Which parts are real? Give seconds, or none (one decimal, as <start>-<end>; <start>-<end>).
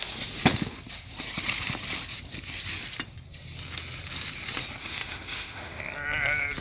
0.0-4.8; 5.8-6.6